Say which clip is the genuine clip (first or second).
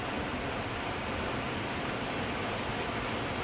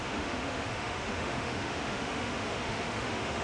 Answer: first